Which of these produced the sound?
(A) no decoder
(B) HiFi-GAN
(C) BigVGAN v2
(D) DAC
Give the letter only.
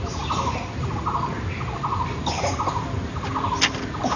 A